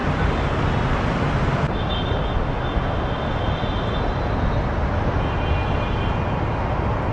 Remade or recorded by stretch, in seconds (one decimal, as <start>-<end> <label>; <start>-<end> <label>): 0.0-7.1 recorded